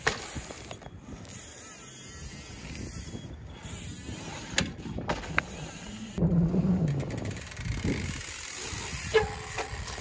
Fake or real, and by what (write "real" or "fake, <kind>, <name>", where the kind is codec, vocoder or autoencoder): real